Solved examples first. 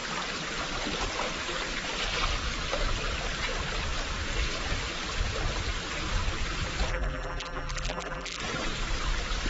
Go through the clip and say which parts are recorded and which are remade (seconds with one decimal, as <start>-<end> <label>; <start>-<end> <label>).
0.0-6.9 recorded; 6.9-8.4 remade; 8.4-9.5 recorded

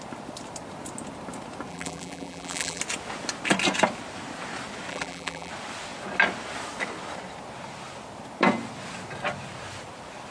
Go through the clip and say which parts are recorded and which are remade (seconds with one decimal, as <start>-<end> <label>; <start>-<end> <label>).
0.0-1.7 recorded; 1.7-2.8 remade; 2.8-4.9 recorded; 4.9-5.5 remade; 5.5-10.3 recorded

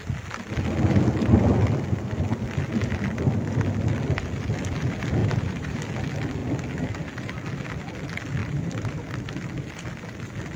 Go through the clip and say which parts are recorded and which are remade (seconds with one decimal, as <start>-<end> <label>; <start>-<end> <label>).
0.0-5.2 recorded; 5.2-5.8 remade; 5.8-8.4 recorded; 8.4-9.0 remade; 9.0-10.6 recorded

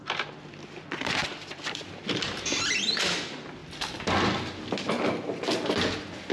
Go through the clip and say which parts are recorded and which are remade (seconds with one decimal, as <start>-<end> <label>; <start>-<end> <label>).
0.0-1.2 recorded; 1.2-3.0 remade; 3.0-6.3 recorded

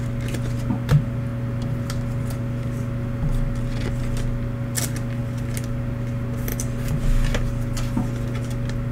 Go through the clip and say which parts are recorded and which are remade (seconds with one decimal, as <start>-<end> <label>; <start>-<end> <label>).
0.0-8.9 recorded

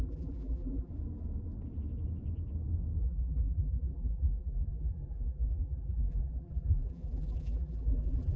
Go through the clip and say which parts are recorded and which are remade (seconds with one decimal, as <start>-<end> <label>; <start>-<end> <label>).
0.0-0.9 remade; 0.9-3.0 recorded; 3.0-8.4 remade